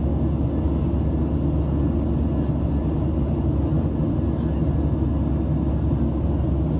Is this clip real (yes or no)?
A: yes